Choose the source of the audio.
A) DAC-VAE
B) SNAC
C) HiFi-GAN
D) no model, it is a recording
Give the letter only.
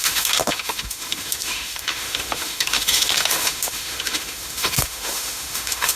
A